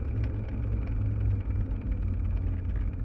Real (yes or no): yes